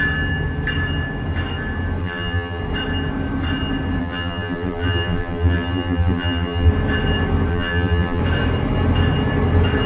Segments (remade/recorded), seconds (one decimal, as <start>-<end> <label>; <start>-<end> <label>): 0.0-2.0 recorded; 2.0-2.6 remade; 2.6-4.0 recorded; 4.0-6.7 remade; 6.7-7.5 recorded; 7.5-8.2 remade; 8.2-9.9 recorded